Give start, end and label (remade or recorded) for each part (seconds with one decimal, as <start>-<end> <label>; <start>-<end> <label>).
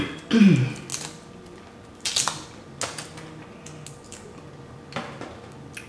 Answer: 0.0-5.9 recorded